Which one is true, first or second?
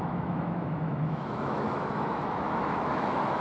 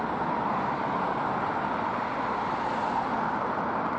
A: second